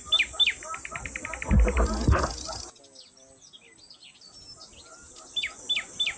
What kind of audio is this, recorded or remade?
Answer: recorded